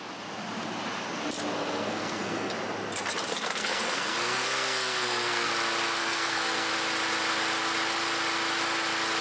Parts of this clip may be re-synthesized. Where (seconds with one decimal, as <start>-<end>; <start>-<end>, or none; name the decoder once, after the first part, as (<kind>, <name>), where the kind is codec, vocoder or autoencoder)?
1.6-2.5 (codec, SNAC); 3.3-5.5; 6.0-6.7

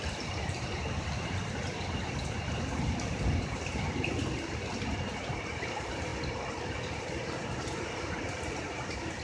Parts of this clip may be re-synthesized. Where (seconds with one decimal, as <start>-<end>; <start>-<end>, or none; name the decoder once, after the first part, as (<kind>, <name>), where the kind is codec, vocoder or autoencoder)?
0.0-3.7 (vocoder, BigVGAN v2); 5.3-9.2